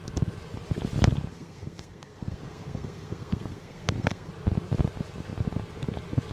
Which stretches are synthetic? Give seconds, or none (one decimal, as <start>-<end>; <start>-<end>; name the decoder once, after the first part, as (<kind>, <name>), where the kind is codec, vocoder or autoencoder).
1.3-4.3 (codec, SNAC)